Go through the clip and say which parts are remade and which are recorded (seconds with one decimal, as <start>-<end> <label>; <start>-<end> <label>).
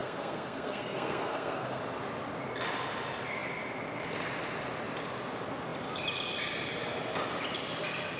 0.0-1.8 remade; 1.8-8.2 recorded